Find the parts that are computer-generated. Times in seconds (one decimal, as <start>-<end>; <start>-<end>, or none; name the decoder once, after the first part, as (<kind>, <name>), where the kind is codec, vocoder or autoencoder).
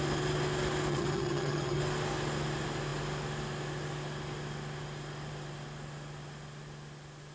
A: 0.9-1.8 (vocoder, HiFi-GAN)